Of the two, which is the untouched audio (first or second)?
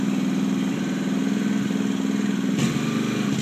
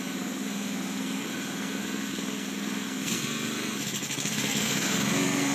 first